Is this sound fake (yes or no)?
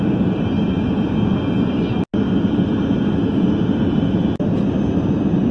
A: no